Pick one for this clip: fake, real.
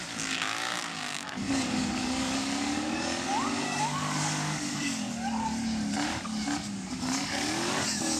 fake